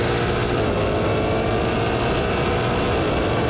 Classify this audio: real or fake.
real